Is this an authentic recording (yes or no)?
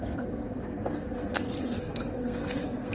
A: no